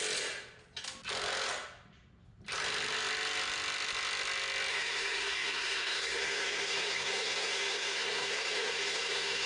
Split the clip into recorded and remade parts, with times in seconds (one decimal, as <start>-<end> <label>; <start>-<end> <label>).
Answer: 0.0-4.7 recorded; 4.7-9.5 remade